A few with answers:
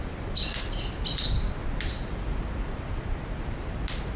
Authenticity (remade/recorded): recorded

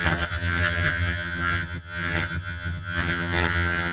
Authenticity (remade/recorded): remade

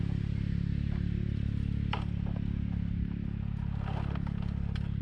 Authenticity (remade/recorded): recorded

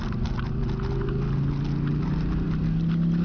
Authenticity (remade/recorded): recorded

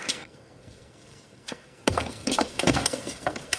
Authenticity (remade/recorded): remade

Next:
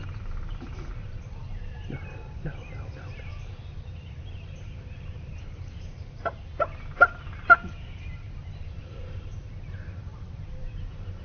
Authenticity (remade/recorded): remade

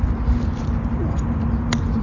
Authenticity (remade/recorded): recorded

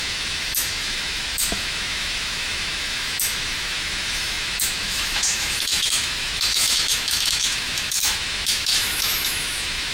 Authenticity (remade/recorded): remade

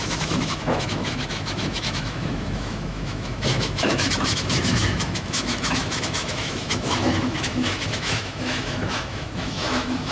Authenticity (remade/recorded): remade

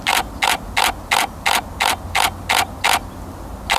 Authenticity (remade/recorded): recorded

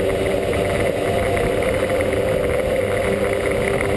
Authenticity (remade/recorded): recorded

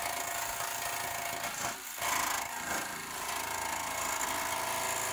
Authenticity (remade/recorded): recorded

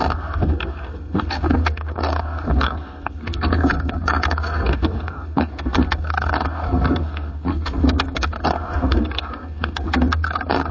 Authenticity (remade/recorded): remade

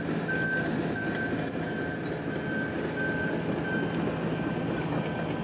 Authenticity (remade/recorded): recorded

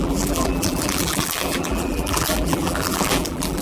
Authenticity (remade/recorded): remade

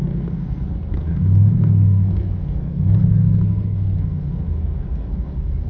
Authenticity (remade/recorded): remade